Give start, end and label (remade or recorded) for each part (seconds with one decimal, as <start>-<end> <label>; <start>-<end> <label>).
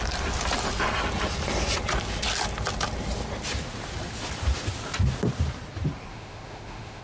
0.0-6.1 recorded; 6.1-7.0 remade